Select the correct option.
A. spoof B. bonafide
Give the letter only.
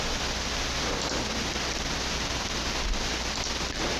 B